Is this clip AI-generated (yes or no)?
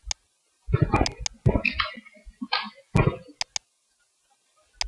no